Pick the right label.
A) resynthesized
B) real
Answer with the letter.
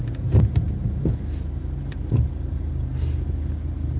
B